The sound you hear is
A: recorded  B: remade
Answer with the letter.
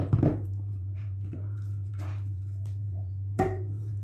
B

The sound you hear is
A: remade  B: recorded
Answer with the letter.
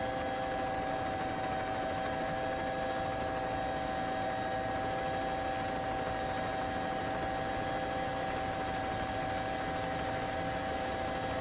B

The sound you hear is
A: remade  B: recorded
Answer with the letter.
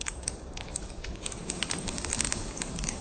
A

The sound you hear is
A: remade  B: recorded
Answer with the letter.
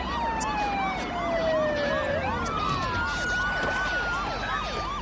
B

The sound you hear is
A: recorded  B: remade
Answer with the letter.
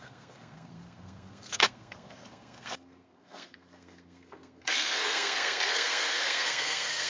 B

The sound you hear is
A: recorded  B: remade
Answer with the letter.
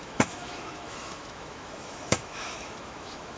B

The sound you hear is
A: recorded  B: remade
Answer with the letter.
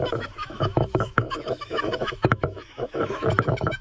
B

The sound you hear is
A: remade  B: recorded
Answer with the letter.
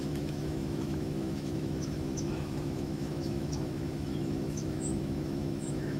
A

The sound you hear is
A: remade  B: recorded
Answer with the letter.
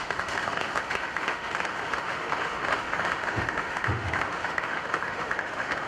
A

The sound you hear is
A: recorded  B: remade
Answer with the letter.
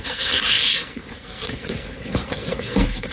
B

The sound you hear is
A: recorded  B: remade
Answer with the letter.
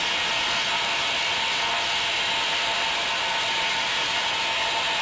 A